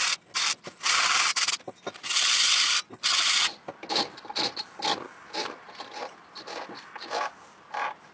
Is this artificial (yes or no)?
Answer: no